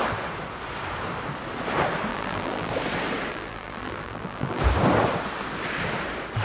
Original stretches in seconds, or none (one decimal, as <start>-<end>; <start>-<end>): 0.0-2.1; 2.7-3.3; 4.6-6.4